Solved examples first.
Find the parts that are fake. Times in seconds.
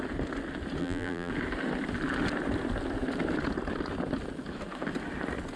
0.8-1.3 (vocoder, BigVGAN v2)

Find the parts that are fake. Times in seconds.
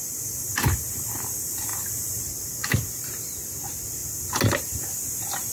none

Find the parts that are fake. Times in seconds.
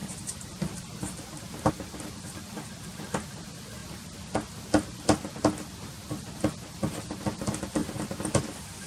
0.0-1.7 (vocoder, BigVGAN v2); 7.8-8.4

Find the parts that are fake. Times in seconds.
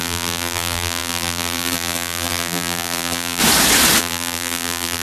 0.0-3.4 (vocoder, BigVGAN v2); 4.0-5.0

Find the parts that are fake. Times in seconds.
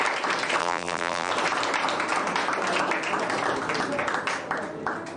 0.6-1.3 (vocoder, BigVGAN v2)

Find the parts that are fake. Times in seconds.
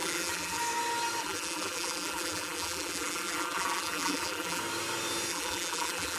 0.0-0.6 (vocoder, BigVGAN v2); 1.2-4.6; 5.3-6.2